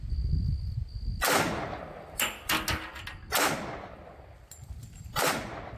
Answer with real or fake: real